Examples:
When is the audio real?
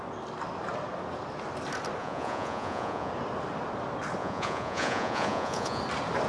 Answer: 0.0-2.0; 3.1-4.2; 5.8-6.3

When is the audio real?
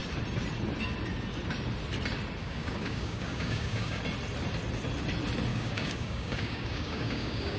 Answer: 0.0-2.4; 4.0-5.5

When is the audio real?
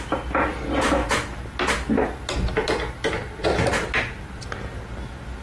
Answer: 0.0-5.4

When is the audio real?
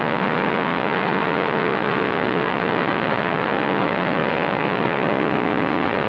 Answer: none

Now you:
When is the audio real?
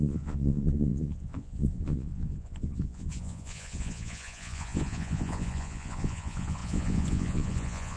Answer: none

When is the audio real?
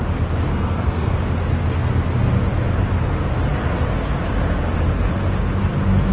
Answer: 0.0-0.5; 1.1-6.1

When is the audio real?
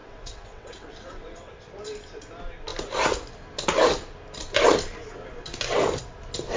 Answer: 1.5-6.6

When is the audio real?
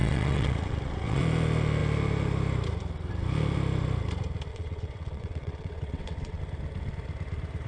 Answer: 1.2-4.5; 6.4-7.7